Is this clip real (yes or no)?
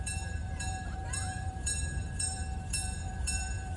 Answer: no